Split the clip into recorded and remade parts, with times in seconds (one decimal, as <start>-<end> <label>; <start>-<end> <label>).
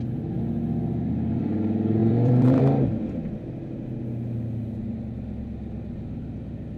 0.0-2.0 recorded; 2.0-2.6 remade; 2.6-6.8 recorded